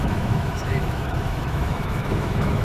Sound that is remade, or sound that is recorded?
remade